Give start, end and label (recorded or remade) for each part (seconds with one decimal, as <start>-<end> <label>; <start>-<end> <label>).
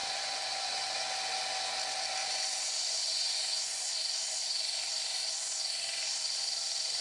0.0-1.0 remade; 1.0-2.2 recorded; 2.2-3.9 remade; 3.9-7.0 recorded